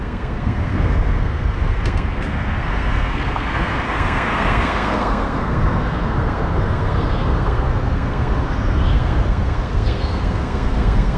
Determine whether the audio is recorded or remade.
remade